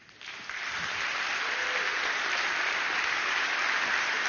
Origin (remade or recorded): recorded